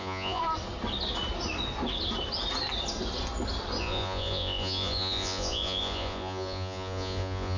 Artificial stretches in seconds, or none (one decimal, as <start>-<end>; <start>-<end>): 0.0-0.4; 3.8-7.6